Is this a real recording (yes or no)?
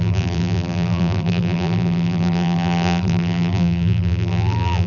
no